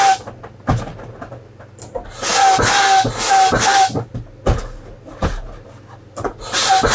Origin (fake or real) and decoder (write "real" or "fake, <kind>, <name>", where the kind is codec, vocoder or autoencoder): real